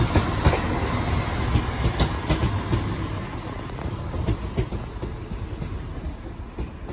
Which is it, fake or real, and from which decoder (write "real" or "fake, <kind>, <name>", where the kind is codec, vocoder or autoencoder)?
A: real